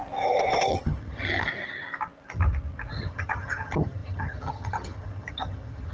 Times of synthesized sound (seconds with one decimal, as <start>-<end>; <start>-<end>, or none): 0.7-1.5; 2.9-5.9